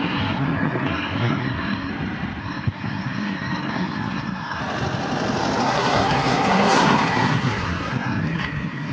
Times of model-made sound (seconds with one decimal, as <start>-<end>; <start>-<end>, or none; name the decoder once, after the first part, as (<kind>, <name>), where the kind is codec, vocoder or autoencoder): 0.0-1.9 (codec, SNAC); 2.4-4.6; 5.6-8.9